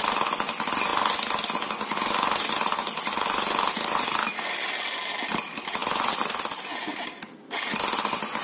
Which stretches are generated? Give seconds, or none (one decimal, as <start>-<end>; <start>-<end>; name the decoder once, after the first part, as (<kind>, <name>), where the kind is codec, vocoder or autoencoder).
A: none